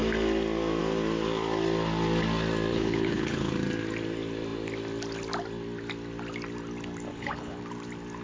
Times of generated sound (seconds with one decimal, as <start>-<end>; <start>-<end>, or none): 2.7-3.5; 7.1-7.6